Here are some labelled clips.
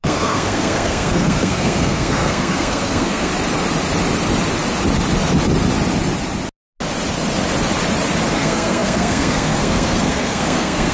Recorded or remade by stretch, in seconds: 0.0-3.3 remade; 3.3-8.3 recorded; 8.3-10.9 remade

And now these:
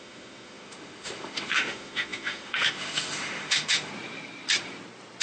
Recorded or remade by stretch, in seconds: 0.0-3.9 remade; 3.9-5.2 recorded

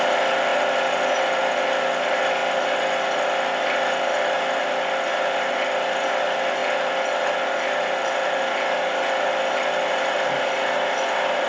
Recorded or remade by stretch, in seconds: 0.0-11.5 recorded

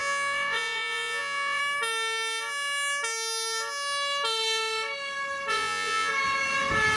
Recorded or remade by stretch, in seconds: 0.0-1.6 remade; 1.6-5.5 recorded; 5.5-6.1 remade; 6.1-7.0 recorded